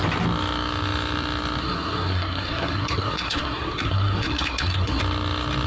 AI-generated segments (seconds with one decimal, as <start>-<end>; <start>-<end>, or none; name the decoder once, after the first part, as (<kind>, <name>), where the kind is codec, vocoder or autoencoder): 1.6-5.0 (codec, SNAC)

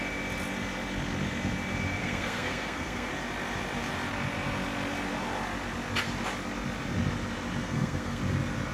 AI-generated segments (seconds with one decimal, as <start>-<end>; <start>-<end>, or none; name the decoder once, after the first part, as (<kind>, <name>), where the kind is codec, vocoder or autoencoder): 2.0-3.1 (codec, SNAC); 7.6-8.2

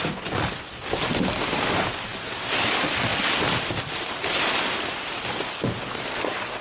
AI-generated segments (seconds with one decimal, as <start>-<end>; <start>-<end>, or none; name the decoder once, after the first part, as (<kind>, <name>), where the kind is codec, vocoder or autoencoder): none

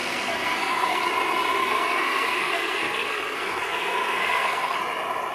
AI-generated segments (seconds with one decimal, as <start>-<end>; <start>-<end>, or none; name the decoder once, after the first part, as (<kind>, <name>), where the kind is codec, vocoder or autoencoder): 0.0-1.1 (codec, SNAC); 1.6-4.8

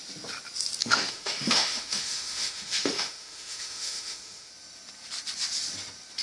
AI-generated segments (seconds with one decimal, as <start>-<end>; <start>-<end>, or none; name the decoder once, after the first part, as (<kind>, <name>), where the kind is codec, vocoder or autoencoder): 0.8-4.5 (autoencoder, DAC-VAE)